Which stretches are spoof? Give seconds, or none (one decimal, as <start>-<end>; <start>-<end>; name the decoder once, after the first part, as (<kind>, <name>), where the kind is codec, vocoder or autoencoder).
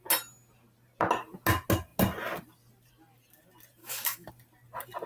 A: 3.8-4.3 (autoencoder, DAC-VAE)